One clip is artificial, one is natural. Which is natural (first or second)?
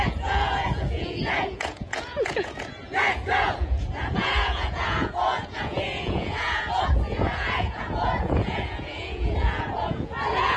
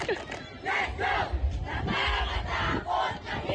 second